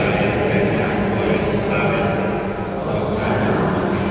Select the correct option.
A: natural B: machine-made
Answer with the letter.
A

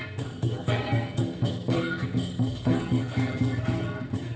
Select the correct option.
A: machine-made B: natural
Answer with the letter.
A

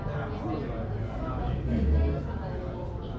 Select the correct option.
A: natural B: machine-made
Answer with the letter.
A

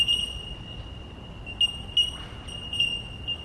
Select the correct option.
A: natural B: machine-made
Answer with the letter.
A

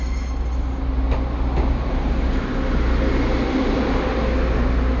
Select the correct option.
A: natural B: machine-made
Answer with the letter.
A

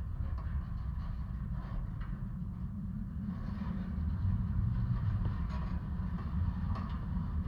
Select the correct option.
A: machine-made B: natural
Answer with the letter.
B